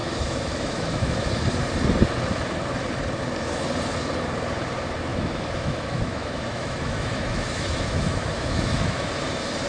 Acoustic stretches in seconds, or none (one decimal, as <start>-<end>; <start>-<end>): 1.3-5.1; 9.1-9.7